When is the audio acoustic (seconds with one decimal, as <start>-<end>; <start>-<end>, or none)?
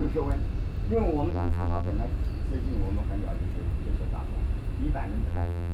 0.0-1.3; 1.9-5.3